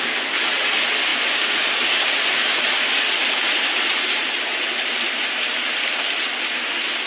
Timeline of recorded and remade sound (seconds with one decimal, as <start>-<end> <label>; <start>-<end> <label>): 0.0-7.1 recorded